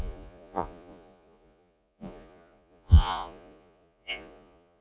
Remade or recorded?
remade